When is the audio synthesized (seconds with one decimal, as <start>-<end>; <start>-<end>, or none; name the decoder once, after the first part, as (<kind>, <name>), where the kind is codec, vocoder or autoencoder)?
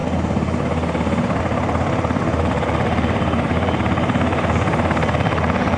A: 1.4-5.8 (vocoder, BigVGAN v2)